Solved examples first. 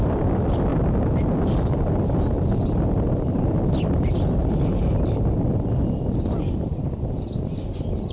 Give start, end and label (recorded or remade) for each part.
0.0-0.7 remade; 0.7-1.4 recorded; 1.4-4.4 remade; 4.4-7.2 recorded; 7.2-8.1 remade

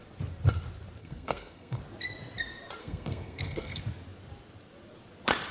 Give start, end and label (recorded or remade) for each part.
0.0-1.0 recorded; 1.0-1.8 remade; 1.8-2.8 recorded; 2.8-3.8 remade; 3.8-5.5 recorded

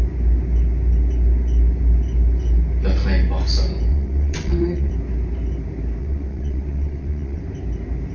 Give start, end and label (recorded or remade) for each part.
0.0-3.9 recorded; 3.9-4.9 remade; 4.9-6.0 recorded; 6.0-7.4 remade; 7.4-8.1 recorded

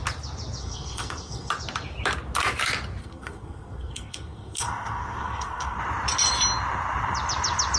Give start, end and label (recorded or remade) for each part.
0.0-0.6 recorded; 0.6-1.5 remade; 1.5-3.0 recorded; 3.0-5.8 remade; 5.8-7.8 recorded

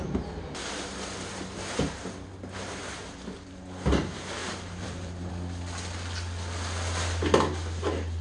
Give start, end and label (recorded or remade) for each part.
0.0-4.4 recorded; 4.4-5.3 remade; 5.3-8.2 recorded

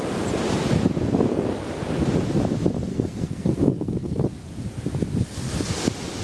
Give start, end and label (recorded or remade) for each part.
0.0-2.9 recorded; 2.9-4.2 remade; 4.2-6.2 recorded